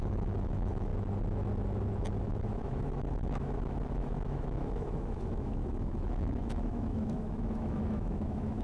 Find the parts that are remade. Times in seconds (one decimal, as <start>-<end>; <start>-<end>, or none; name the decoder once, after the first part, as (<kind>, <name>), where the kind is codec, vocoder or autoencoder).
0.0-0.9 (autoencoder, DAC-VAE); 2.2-8.6